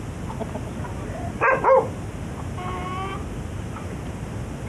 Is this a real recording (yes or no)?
yes